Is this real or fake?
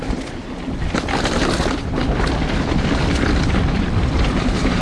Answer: fake